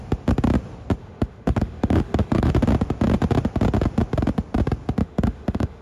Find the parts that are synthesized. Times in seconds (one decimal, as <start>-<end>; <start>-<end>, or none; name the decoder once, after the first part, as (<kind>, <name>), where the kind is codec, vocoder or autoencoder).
1.0-2.5 (autoencoder, DAC-VAE); 5.0-5.8